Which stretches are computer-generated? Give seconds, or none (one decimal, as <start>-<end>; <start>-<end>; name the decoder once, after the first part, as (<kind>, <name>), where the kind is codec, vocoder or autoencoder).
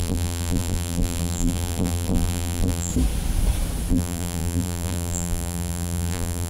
0.0-2.9 (vocoder, BigVGAN v2); 3.9-6.5